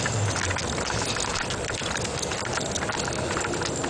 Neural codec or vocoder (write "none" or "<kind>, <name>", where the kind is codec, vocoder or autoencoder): none